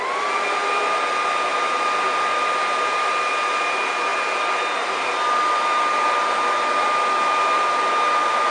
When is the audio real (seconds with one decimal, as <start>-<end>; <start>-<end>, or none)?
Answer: 0.0-8.5